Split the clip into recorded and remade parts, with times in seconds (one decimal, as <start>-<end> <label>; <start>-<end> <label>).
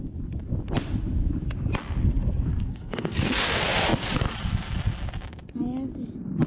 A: 0.0-2.5 recorded; 2.5-3.4 remade; 3.4-6.5 recorded